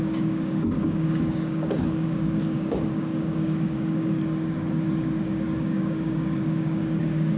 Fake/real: fake